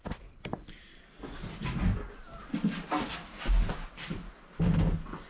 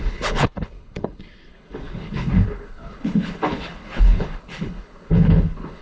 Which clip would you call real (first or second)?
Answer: first